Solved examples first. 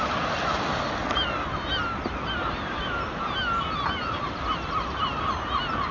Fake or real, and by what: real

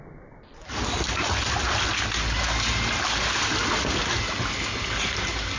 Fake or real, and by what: real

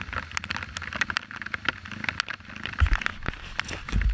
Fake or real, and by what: real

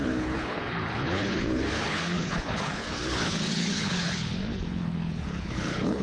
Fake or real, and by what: fake, codec, HILCodec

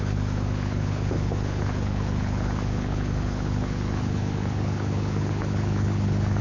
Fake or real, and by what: fake, codec, HILCodec